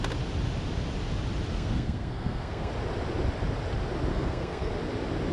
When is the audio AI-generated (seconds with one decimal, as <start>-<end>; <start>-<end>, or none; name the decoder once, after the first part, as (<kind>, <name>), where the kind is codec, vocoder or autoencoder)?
1.5-2.7 (codec, SNAC); 4.1-4.7